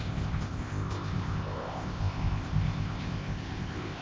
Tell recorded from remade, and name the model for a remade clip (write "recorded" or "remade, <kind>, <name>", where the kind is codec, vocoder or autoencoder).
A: remade, codec, ZipCodec